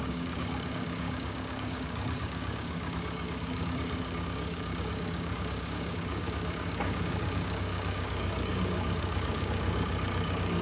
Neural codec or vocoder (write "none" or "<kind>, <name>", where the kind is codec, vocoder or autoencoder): codec, DAC